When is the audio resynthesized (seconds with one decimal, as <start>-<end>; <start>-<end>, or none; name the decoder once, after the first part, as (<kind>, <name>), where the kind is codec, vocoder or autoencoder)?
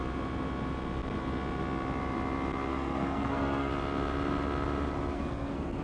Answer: 2.7-3.7 (codec, SNAC); 5.1-5.8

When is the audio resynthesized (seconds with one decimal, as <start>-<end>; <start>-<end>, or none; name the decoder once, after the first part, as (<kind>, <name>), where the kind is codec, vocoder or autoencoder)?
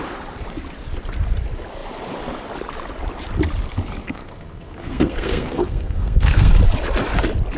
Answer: 4.0-6.5 (codec, SNAC)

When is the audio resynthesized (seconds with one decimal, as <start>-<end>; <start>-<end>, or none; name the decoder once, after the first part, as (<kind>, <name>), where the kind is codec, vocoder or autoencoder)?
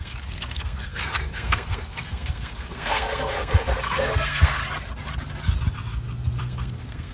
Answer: 0.0-4.6 (codec, SNAC); 6.4-7.1